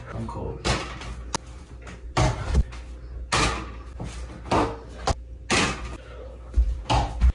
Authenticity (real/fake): real